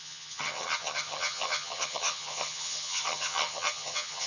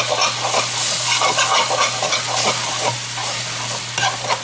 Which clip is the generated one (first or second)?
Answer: first